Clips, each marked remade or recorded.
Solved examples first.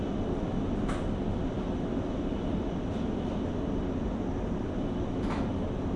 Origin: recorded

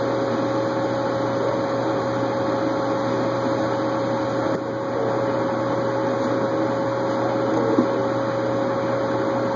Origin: recorded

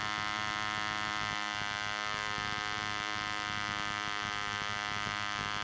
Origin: recorded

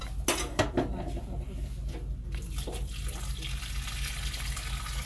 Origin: recorded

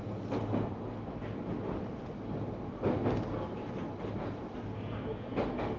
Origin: recorded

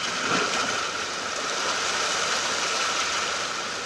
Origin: recorded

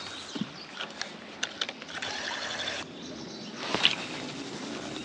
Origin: recorded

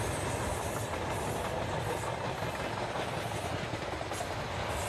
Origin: recorded